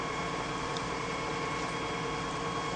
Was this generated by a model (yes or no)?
no